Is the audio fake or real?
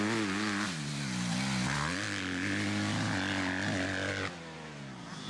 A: real